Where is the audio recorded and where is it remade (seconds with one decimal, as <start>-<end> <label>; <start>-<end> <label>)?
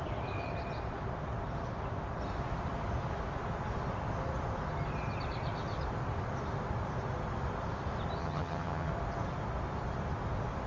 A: 0.0-8.2 recorded; 8.2-8.9 remade; 8.9-10.7 recorded